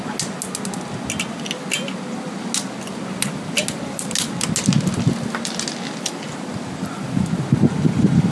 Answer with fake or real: real